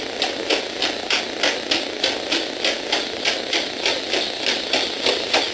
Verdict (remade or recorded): recorded